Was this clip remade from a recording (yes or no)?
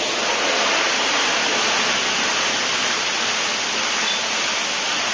no